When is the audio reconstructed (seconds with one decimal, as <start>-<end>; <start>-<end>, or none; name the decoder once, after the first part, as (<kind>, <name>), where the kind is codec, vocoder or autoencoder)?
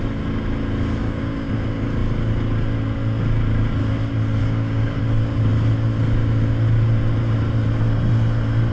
1.0-1.5 (codec, DAC); 4.4-5.0